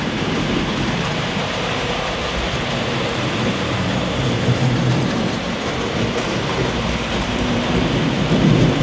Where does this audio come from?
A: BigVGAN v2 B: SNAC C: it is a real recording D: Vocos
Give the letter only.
A